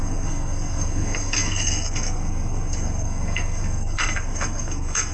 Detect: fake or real fake